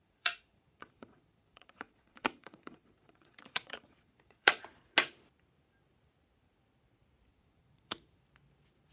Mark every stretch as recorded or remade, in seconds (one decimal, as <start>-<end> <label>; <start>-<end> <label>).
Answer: 0.0-4.9 remade; 4.9-7.3 recorded; 7.3-8.2 remade; 8.2-8.9 recorded